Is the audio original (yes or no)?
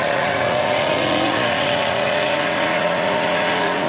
no